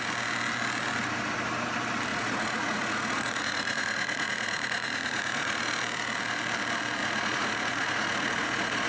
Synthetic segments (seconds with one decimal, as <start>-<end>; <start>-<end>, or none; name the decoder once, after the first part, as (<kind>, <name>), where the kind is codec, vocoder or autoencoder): 2.1-5.5 (vocoder, Vocos); 7.0-8.9